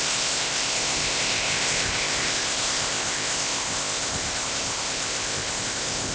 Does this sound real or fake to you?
fake